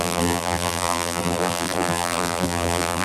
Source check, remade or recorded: remade